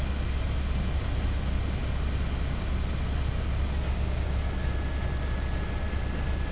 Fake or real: real